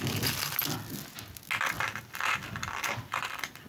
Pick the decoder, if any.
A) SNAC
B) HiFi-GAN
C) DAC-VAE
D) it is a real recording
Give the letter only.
D